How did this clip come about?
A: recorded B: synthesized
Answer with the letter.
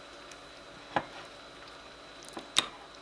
A